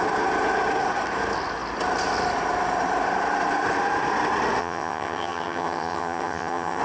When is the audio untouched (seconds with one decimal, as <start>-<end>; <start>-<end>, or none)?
0.0-4.6